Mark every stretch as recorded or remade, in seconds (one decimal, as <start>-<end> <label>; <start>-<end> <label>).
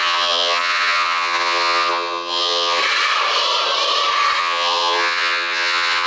0.0-2.8 remade; 2.8-4.4 recorded; 4.4-6.1 remade